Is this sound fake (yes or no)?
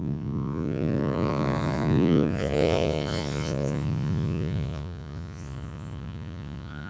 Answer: yes